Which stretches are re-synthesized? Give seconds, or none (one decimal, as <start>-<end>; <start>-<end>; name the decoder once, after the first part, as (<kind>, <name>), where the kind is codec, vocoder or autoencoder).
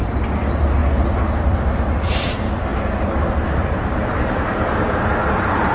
0.8-1.4 (vocoder, BigVGAN v2)